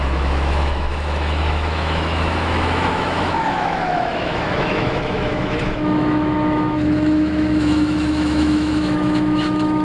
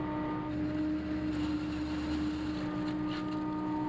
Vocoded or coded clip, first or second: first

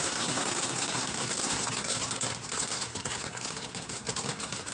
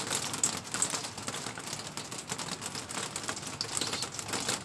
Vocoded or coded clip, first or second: first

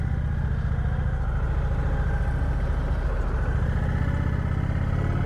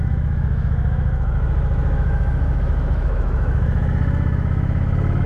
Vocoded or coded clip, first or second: second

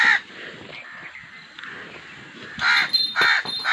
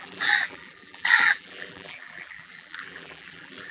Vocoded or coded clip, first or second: second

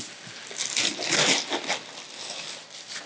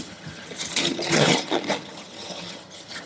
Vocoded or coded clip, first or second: second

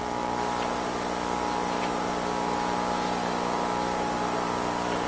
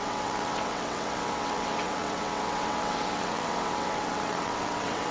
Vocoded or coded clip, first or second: second